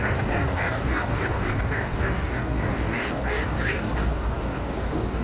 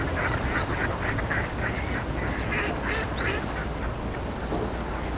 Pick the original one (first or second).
second